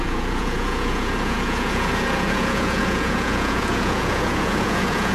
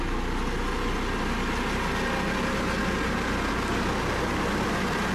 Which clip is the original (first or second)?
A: second